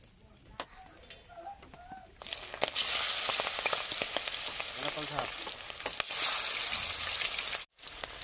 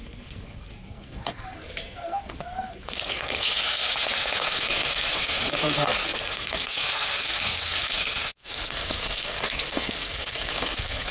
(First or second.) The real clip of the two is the first